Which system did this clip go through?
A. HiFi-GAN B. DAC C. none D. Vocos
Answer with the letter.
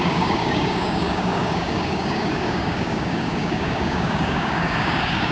B